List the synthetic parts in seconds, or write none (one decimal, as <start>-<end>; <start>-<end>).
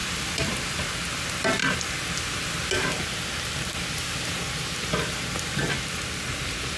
0.0-0.9